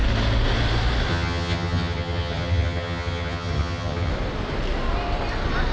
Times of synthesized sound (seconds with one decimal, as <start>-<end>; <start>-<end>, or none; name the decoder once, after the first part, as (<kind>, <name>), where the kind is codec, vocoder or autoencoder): 1.1-4.1 (vocoder, HiFi-GAN)